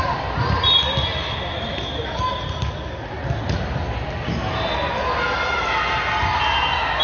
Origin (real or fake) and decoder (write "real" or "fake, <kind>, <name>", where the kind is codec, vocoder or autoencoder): real